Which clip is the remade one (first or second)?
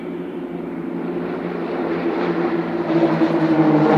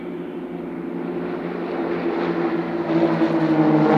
first